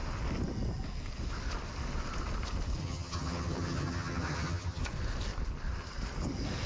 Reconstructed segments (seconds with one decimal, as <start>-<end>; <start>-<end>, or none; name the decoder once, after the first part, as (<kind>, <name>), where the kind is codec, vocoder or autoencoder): 2.8-4.8 (vocoder, HiFi-GAN)